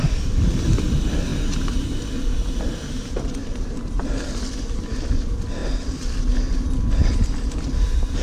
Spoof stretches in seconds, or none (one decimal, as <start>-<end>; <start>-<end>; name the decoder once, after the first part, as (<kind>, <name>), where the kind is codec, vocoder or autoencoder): 3.4-4.3 (vocoder, BigVGAN v2)

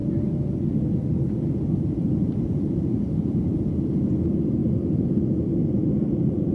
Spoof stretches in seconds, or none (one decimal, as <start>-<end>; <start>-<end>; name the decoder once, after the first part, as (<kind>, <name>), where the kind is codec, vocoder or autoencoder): 0.0-0.5 (vocoder, BigVGAN v2); 1.1-4.1

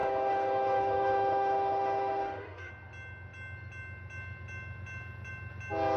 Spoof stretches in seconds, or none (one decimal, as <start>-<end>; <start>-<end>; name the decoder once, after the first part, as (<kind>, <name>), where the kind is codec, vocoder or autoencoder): 0.0-2.7 (autoencoder, DAC-VAE)

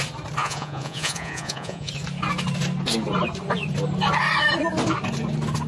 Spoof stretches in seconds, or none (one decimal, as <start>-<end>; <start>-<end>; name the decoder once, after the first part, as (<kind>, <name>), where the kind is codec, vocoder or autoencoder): 0.4-1.9 (vocoder, Vocos)

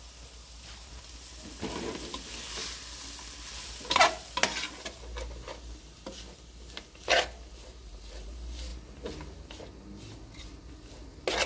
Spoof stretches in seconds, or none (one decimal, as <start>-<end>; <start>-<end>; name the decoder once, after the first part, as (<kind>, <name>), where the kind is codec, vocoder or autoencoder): none

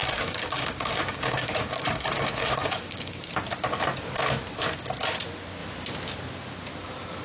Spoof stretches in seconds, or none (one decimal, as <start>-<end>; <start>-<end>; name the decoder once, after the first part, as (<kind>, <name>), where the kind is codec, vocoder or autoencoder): 0.0-3.3 (codec, DAC)